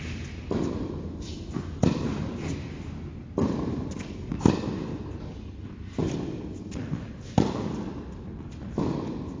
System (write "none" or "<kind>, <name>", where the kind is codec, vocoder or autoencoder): none